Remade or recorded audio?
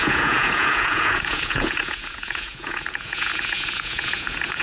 remade